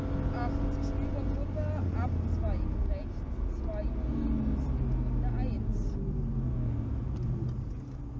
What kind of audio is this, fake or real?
real